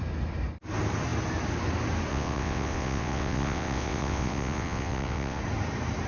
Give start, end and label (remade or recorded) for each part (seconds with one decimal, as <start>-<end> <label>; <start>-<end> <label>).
0.0-2.1 recorded; 2.1-5.4 remade; 5.4-6.1 recorded